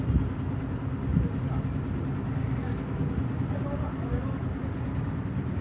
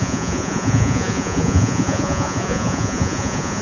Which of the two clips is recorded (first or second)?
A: first